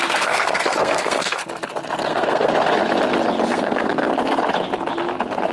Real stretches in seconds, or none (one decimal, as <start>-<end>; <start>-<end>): 1.4-2.1; 2.5-3.5; 4.1-5.5